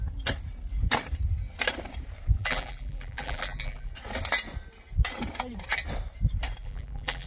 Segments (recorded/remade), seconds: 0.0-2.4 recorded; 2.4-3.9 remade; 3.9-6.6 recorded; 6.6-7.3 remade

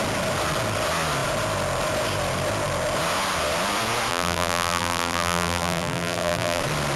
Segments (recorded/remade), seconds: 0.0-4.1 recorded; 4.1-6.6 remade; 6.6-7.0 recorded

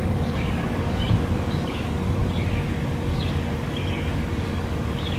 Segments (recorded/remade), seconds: 0.0-5.2 remade